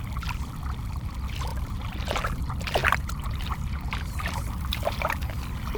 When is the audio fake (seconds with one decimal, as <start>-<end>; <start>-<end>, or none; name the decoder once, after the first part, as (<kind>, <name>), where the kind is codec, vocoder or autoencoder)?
1.5-2.4 (vocoder, BigVGAN v2); 2.8-5.3